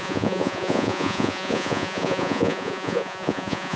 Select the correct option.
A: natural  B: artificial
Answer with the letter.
B